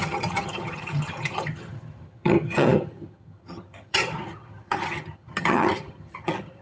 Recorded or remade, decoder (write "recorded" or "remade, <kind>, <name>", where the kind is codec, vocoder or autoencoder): remade, vocoder, HiFi-GAN